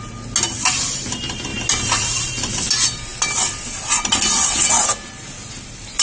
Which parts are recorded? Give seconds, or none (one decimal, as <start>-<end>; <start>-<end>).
0.0-6.0